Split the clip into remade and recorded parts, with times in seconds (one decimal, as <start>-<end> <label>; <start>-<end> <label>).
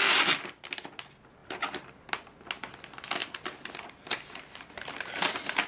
0.0-1.4 recorded; 1.4-2.0 remade; 2.0-3.2 recorded; 3.2-5.3 remade; 5.3-5.7 recorded